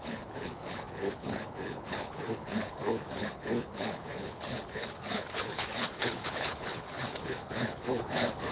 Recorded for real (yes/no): no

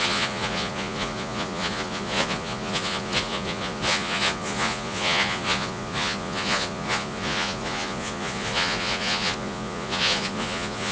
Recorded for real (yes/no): no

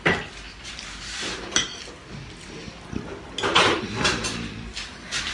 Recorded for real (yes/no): yes